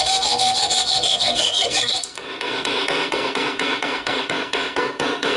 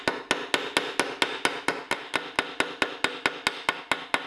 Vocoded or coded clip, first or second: first